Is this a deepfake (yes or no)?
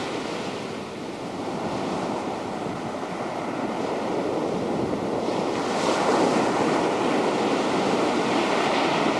no